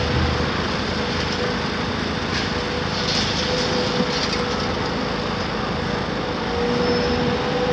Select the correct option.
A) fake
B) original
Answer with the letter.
B